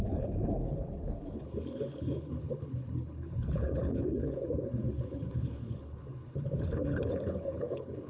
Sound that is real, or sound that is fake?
fake